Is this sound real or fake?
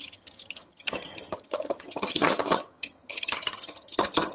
fake